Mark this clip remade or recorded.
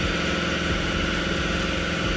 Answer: recorded